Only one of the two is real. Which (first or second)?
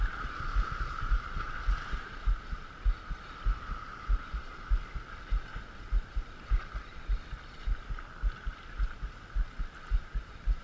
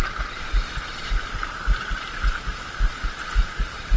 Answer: first